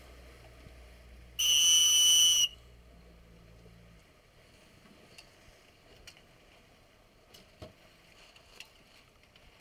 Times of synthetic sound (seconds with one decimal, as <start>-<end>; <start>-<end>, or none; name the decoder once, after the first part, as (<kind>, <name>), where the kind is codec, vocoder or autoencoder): none